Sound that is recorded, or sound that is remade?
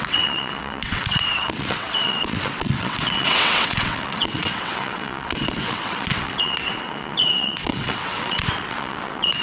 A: remade